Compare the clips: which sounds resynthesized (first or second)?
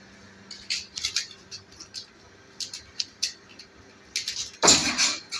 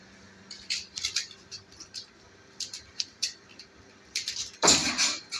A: second